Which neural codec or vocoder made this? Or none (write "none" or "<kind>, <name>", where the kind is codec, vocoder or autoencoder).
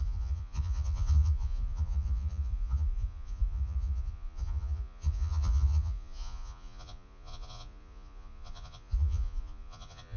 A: vocoder, Vocos